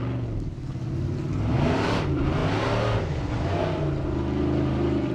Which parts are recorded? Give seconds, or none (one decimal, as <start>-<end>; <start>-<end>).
0.0-1.5; 2.0-5.1